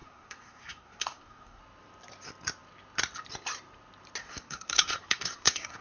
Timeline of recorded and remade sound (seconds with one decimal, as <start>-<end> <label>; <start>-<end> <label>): 0.0-1.6 remade; 1.6-4.2 recorded; 4.2-5.8 remade